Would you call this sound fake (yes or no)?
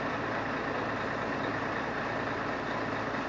no